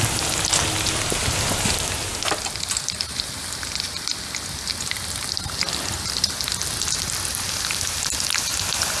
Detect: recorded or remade recorded